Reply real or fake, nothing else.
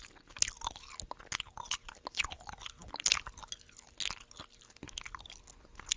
real